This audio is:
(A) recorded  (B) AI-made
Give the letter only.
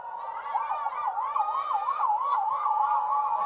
A